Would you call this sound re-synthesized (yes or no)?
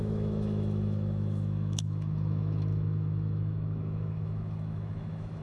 yes